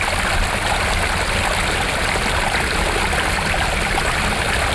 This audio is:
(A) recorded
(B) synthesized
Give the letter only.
A